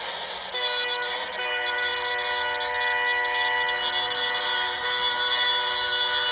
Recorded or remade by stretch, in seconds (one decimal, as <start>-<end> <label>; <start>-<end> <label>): 0.0-6.3 recorded